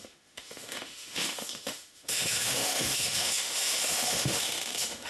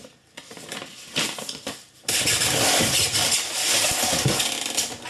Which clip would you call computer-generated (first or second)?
first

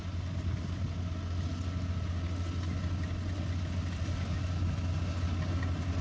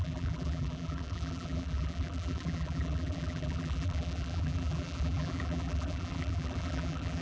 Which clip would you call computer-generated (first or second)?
second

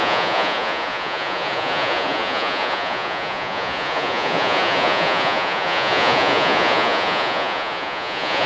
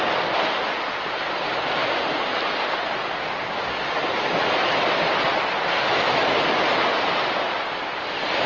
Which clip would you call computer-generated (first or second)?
first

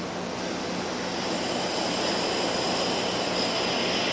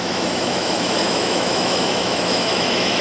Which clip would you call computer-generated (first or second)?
second